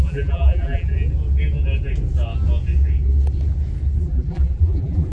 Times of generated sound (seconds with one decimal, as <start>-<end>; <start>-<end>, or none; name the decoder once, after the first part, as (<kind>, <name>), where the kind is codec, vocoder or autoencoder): 0.0-0.9 (vocoder, BigVGAN v2); 4.0-5.1